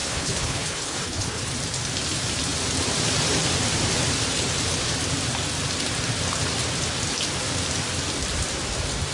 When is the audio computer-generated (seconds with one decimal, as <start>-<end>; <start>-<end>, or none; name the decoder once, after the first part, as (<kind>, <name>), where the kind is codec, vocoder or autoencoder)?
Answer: 0.0-1.4 (codec, HILCodec)